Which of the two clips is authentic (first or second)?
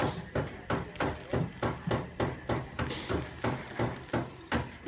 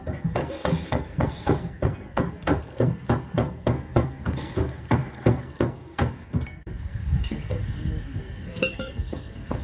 first